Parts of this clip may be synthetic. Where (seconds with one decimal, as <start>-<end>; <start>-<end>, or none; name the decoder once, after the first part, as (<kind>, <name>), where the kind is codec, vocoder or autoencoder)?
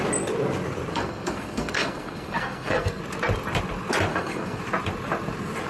0.9-3.0 (codec, SNAC); 4.1-4.6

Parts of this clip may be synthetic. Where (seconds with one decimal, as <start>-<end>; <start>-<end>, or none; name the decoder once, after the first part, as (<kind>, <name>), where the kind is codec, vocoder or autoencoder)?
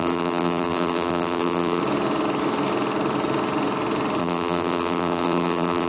0.0-1.8 (vocoder, BigVGAN v2); 4.2-5.9